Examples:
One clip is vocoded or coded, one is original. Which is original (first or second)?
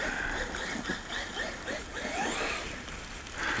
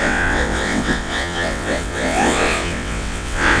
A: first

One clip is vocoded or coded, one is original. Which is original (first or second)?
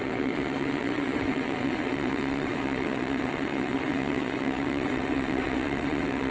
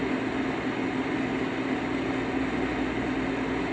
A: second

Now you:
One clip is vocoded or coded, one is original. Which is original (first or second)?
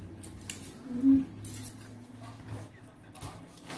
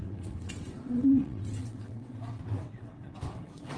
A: first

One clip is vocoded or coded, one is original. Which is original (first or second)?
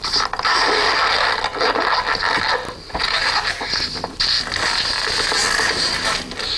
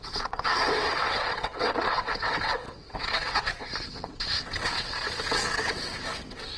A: first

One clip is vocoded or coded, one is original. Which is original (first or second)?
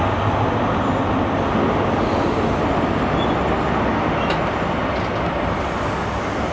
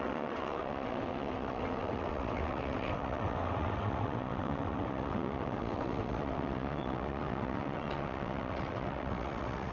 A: first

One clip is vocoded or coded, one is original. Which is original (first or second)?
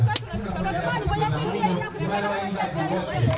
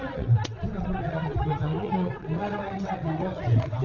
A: first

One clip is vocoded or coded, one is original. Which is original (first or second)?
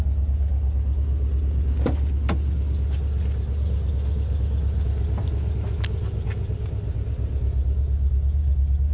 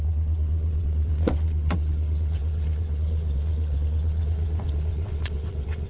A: first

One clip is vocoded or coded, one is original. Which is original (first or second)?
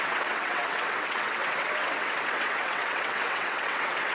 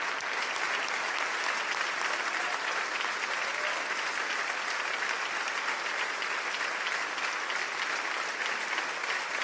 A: second